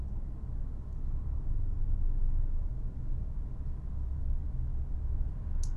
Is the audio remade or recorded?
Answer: recorded